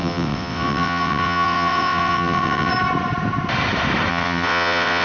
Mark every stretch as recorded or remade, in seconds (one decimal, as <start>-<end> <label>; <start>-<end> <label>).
0.0-2.7 remade; 2.7-4.1 recorded; 4.1-5.0 remade